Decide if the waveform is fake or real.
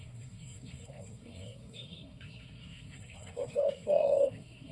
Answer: fake